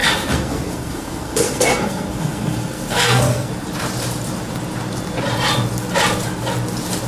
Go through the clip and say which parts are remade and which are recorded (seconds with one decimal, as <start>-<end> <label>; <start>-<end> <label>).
0.0-3.5 remade; 3.5-7.1 recorded